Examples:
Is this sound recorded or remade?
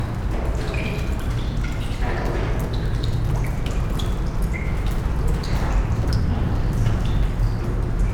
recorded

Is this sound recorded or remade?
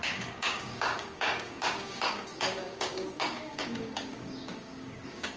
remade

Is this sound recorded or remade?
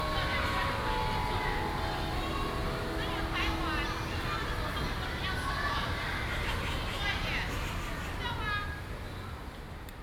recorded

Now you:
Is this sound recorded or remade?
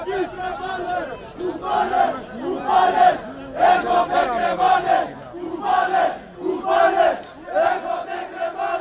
recorded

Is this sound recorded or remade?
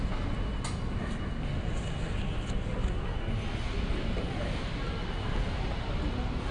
recorded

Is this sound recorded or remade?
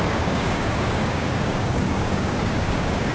remade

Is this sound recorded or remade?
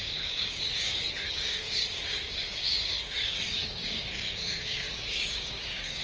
remade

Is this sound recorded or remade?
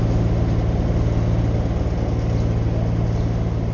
recorded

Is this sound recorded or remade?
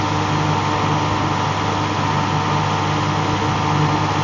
recorded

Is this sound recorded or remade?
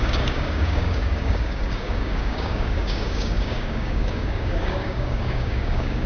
remade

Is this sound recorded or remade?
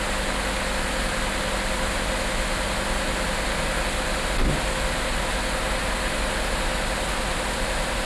recorded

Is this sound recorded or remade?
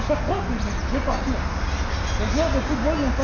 recorded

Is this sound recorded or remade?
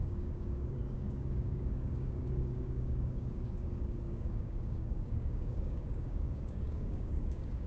remade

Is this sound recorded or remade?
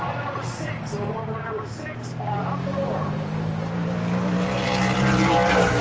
recorded